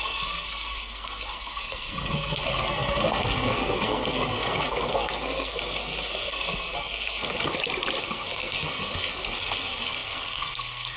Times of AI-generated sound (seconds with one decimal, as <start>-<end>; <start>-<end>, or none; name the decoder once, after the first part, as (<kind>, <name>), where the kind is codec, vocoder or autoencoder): 0.0-7.5 (codec, SNAC); 8.0-11.0

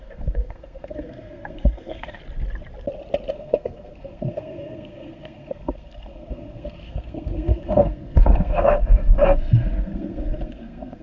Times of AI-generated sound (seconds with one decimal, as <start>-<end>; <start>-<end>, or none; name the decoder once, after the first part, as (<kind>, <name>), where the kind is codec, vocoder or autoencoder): 0.0-2.2 (codec, SNAC); 3.3-11.0

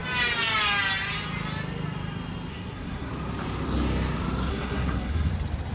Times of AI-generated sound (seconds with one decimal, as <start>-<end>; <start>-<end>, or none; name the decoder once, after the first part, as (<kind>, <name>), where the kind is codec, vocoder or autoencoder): 2.5-3.1 (codec, SNAC); 4.5-5.3

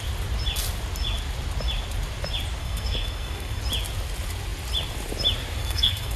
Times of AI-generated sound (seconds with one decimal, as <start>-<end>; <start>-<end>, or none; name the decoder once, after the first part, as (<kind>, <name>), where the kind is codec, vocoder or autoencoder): 2.6-3.6 (codec, SNAC); 5.6-6.2

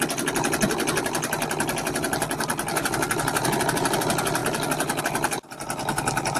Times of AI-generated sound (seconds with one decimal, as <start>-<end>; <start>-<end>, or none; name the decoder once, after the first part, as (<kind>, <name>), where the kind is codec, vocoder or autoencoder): none